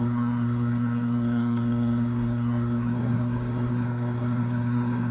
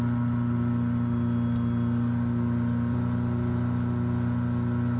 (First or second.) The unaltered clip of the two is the second